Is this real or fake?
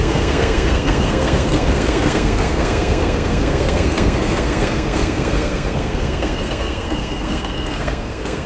fake